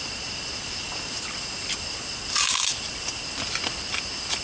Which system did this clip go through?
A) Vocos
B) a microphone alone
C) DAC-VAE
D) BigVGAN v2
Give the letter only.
B